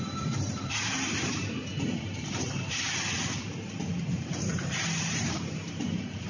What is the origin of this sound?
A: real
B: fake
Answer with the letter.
B